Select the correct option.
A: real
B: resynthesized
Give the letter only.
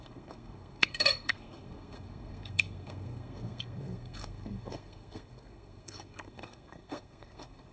B